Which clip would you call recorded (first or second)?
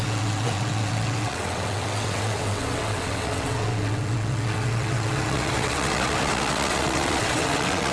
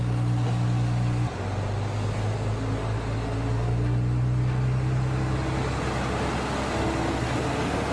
second